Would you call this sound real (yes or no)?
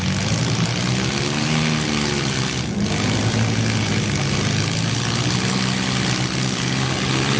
yes